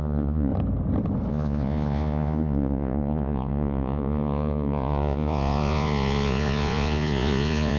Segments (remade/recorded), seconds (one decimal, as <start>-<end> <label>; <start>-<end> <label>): 0.0-0.5 remade; 0.5-1.3 recorded; 1.3-7.8 remade